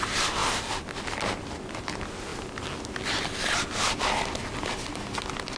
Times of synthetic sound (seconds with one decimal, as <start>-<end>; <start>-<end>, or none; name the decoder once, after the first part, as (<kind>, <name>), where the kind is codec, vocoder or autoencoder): none